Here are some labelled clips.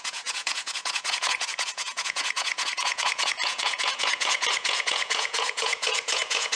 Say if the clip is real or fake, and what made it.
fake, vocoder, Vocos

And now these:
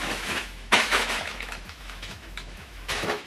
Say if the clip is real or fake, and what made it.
fake, autoencoder, DAC-VAE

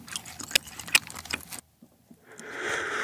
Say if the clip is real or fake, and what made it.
real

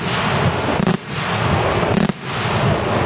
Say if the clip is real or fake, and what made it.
real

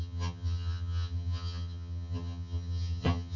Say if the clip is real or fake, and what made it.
fake, vocoder, HiFi-GAN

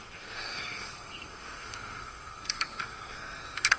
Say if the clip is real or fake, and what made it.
fake, codec, SNAC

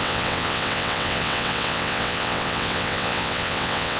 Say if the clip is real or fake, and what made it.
fake, vocoder, WaveNeXt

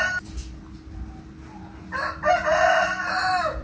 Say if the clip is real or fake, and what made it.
real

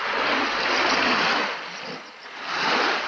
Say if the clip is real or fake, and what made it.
real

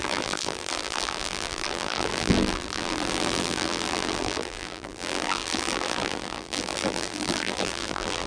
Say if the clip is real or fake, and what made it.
fake, vocoder, BigVGAN v2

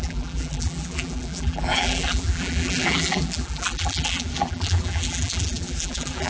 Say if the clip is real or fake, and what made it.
fake, vocoder, BigVGAN v2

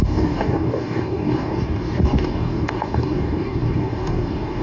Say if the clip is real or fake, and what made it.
fake, codec, DAC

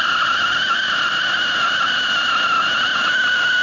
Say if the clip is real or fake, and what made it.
real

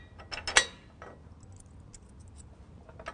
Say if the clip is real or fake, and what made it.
real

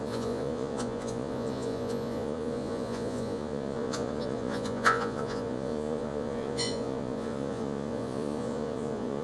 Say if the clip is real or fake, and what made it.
fake, vocoder, Vocos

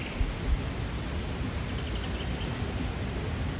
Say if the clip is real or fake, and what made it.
real